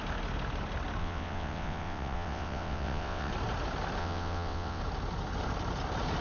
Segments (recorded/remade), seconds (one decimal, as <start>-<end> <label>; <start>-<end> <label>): 0.0-1.0 recorded; 1.0-3.3 remade; 3.3-4.0 recorded; 4.0-4.8 remade; 4.8-6.2 recorded